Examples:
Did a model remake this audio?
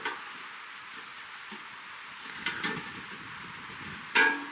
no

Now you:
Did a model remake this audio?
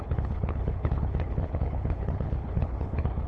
yes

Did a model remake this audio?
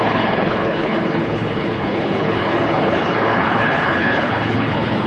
yes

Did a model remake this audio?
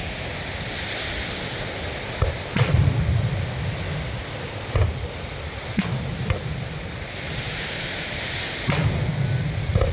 no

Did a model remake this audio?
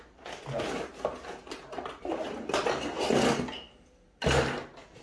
no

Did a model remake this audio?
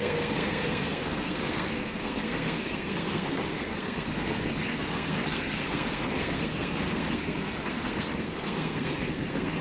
yes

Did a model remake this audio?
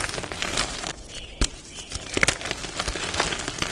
no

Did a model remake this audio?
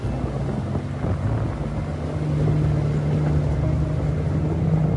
no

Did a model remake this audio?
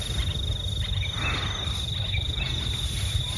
no